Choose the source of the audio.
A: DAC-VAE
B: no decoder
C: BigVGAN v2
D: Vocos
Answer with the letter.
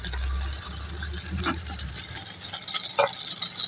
B